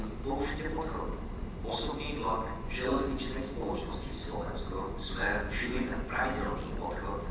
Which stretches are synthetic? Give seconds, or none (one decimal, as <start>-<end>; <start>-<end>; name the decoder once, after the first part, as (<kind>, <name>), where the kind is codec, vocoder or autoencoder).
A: 2.2-6.6 (vocoder, Vocos)